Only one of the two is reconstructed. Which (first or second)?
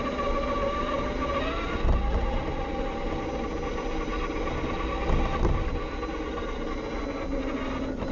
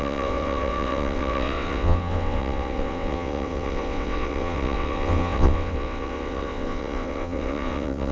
second